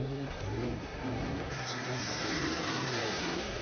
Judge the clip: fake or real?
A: fake